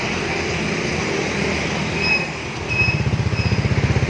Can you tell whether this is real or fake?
real